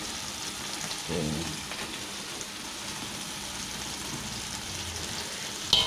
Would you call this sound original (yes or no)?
yes